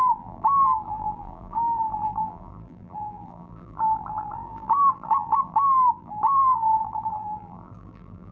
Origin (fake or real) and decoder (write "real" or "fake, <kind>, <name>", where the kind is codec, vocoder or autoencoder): fake, vocoder, BigVGAN v2